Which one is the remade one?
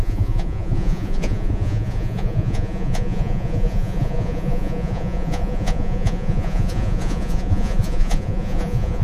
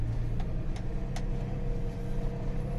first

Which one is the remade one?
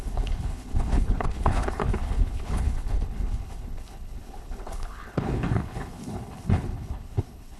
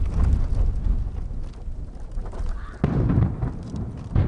first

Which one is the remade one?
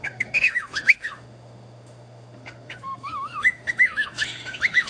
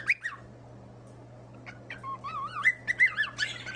first